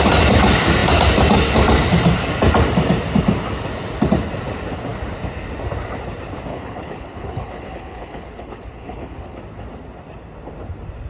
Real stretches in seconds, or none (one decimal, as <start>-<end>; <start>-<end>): 0.0-6.5; 9.4-11.1